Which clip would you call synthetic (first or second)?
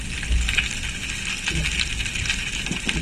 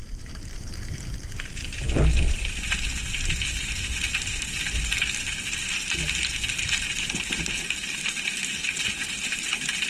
second